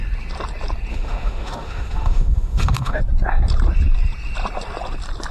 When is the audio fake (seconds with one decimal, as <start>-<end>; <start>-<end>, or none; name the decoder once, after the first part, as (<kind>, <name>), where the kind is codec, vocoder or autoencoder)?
0.9-3.0 (autoencoder, DAC-VAE)